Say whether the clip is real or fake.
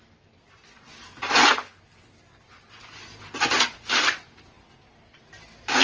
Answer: real